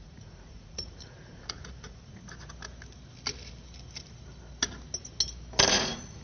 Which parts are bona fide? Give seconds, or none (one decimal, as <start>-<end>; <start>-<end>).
2.2-5.7